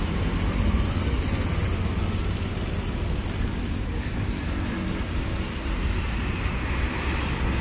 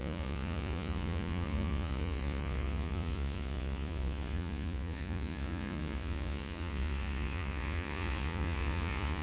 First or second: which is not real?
second